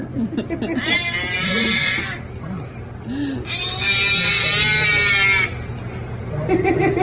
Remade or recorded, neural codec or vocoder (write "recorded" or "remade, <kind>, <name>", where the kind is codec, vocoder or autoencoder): recorded